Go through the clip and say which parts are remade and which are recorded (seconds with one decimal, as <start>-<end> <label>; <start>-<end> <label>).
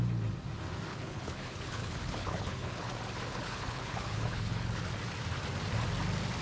0.0-0.9 recorded; 0.9-2.9 remade; 2.9-3.3 recorded; 3.3-4.8 remade; 4.8-6.4 recorded